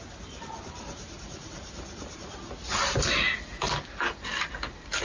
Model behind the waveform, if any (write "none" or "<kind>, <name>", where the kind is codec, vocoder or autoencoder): none